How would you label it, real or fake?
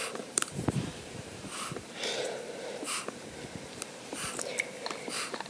fake